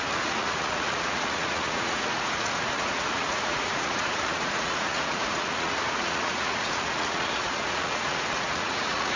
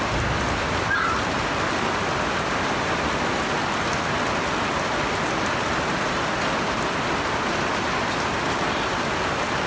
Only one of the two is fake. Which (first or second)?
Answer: first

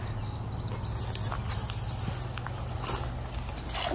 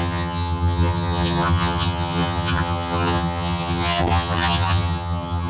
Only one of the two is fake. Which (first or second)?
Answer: second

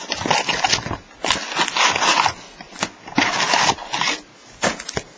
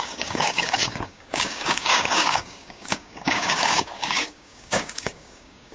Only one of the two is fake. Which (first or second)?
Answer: second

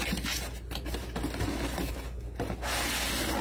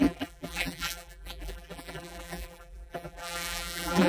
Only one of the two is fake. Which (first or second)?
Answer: second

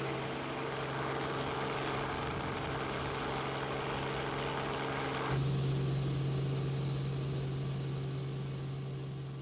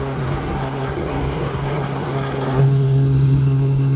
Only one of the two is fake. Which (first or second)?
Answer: second